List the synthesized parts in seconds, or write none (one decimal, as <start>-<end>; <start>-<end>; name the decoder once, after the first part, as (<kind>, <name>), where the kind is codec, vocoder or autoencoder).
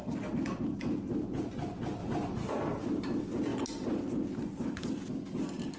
none